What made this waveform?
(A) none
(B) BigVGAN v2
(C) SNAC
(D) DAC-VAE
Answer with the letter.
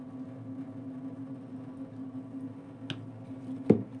A